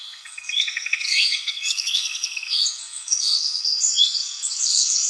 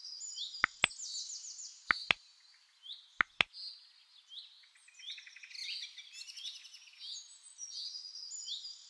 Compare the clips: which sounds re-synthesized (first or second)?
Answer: first